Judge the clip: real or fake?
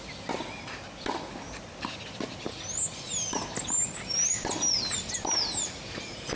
real